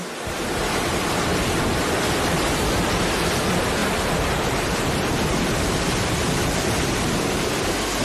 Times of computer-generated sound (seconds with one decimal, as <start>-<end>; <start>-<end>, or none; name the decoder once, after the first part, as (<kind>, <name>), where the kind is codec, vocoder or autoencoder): none